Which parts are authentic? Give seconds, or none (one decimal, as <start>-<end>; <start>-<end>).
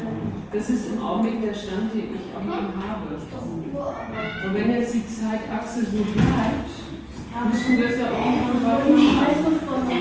0.0-10.0